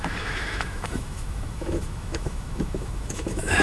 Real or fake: fake